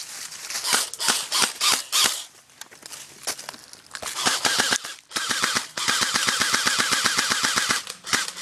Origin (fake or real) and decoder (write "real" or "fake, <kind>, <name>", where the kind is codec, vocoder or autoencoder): real